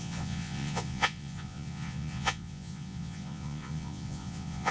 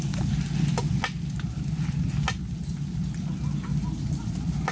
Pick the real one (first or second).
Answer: second